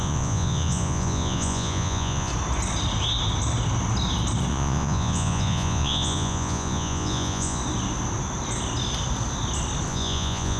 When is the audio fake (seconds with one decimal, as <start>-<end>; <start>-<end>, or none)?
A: 0.0-2.3; 4.5-7.6; 9.9-10.6

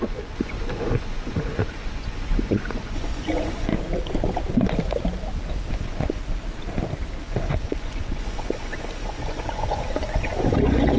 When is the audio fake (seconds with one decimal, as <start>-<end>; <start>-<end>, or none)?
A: 0.0-3.7; 5.7-6.2; 7.2-11.0

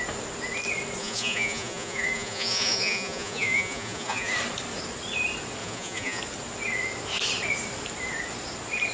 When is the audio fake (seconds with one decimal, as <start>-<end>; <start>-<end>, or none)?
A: 1.0-4.3; 5.6-6.2

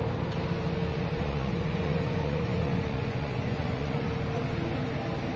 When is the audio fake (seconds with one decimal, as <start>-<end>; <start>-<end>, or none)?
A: 0.9-4.1